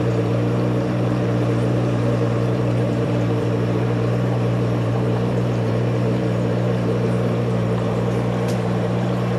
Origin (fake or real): fake